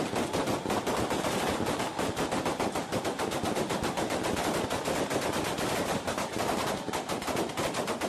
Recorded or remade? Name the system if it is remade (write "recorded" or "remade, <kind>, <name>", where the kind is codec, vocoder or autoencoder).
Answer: recorded